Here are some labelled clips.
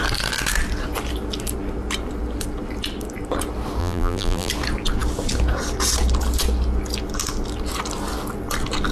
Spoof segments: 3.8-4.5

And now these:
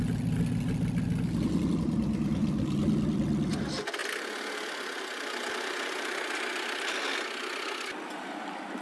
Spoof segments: 2.4-3.6; 4.0-7.0